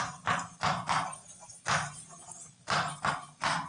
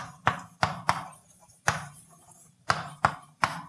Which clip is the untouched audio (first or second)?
first